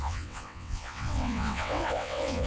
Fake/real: fake